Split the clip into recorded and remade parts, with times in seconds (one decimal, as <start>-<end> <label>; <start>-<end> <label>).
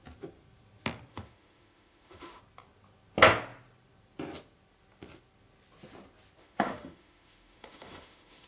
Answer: 0.0-1.1 recorded; 1.1-2.4 remade; 2.4-6.4 recorded; 6.4-8.5 remade